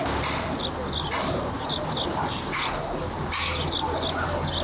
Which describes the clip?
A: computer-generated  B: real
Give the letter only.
B